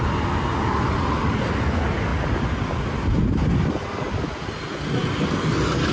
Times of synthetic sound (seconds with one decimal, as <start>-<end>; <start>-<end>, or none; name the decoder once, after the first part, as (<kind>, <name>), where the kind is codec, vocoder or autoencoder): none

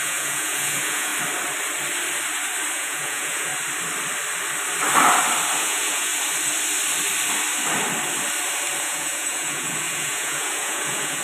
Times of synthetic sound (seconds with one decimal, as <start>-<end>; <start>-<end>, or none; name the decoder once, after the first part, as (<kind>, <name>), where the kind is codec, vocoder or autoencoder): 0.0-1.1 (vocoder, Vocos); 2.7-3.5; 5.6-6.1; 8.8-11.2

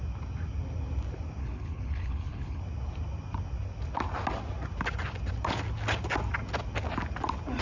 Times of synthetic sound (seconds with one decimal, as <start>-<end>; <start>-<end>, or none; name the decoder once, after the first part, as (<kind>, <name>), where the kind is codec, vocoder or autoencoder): 1.4-2.6 (codec, HILCodec)

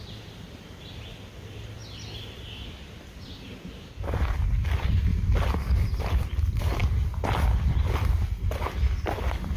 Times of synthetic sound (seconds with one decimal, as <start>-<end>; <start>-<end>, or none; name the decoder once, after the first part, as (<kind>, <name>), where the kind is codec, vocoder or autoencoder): 0.0-1.8 (vocoder, BigVGAN v2); 4.4-5.1; 6.0-6.8